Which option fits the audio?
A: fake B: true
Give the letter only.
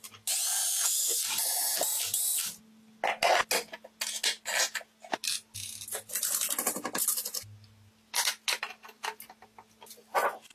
B